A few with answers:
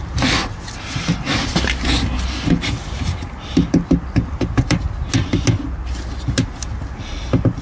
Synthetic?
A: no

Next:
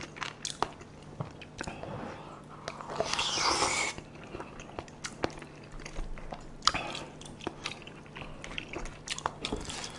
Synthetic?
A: no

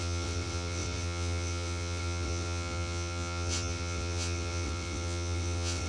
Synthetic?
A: yes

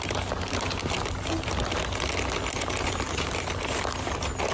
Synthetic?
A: no